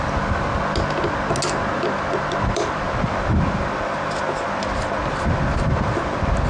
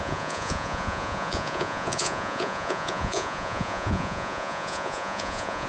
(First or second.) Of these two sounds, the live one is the first